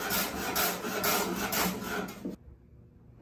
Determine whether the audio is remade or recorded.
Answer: recorded